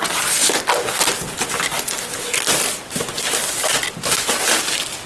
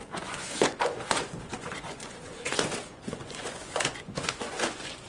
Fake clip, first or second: second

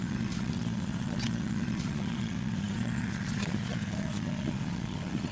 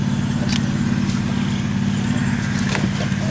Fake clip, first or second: first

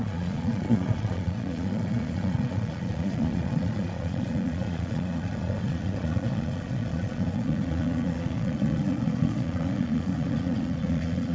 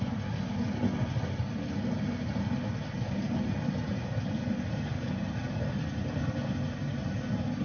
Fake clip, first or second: first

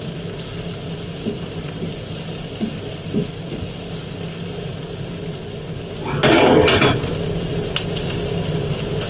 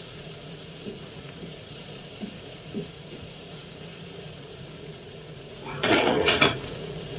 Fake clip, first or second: second